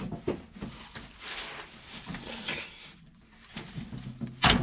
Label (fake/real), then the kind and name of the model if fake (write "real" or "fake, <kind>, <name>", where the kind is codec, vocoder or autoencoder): real